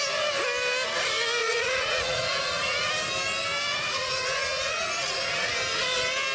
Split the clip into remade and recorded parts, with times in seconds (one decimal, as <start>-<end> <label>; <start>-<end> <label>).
0.0-1.4 recorded; 1.4-2.9 remade; 2.9-3.7 recorded; 3.7-5.5 remade; 5.5-6.3 recorded